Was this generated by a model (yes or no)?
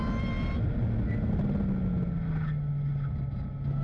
no